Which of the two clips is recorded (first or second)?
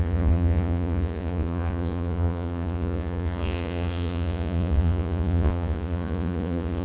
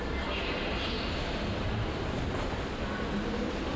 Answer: second